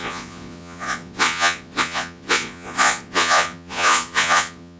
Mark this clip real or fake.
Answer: fake